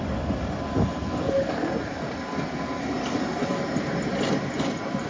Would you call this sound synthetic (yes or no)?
no